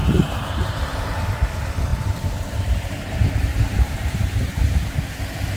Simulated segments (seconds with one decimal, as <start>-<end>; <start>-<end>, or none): 0.0-1.3; 1.9-5.0